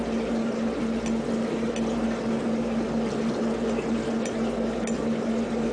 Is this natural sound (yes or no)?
yes